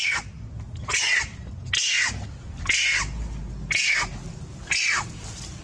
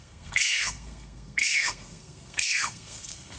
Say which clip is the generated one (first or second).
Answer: second